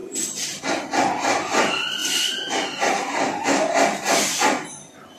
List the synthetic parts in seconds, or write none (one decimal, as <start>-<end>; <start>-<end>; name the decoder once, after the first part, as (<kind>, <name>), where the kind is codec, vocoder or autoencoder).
none